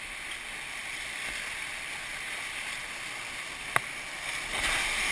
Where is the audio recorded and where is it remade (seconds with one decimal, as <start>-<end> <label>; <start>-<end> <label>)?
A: 0.0-5.1 recorded